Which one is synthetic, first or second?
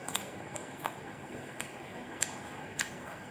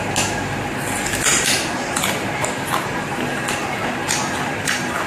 first